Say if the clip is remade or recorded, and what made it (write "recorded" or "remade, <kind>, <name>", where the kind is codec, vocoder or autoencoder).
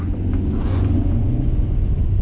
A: remade, vocoder, Vocos